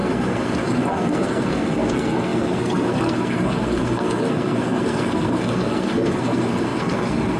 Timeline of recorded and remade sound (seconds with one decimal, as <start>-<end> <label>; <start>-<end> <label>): 0.0-7.4 remade